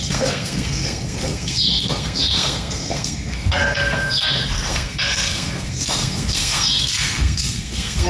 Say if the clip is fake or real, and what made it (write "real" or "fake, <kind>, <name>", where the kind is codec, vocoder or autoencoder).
fake, codec, SNAC